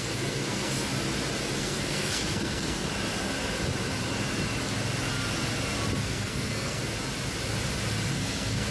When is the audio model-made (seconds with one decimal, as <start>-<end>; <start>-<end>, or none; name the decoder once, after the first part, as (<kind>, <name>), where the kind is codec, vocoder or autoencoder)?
0.0-0.9 (codec, SNAC); 1.6-2.9; 6.0-6.8; 8.1-8.7